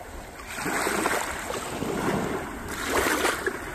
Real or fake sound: real